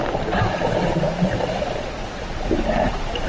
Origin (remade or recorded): recorded